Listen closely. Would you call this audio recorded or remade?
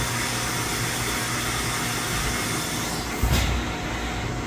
recorded